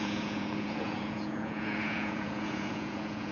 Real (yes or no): no